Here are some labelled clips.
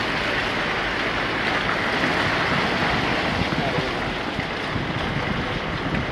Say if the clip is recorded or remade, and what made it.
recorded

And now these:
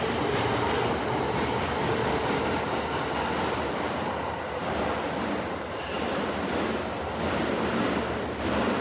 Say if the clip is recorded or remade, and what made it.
recorded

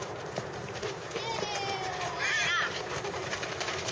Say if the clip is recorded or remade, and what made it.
remade, vocoder, BigVGAN v2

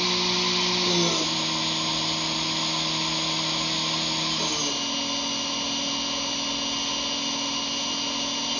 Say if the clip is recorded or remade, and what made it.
recorded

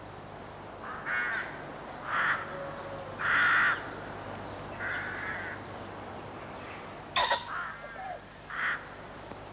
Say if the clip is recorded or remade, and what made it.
recorded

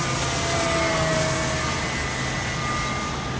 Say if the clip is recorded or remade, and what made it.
recorded